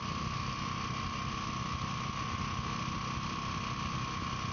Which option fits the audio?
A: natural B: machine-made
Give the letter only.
A